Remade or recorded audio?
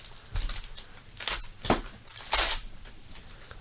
recorded